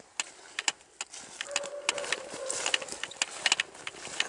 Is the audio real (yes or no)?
yes